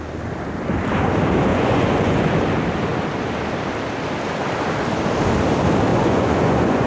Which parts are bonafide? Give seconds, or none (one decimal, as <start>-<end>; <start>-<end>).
0.0-1.5; 2.3-5.9